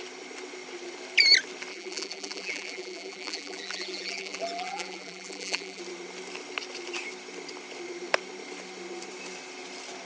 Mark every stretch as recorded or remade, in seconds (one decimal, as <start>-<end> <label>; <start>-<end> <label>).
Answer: 0.0-1.7 recorded; 1.7-5.8 remade; 5.8-10.1 recorded